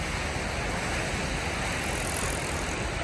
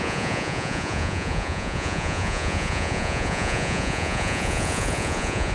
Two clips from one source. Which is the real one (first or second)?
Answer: first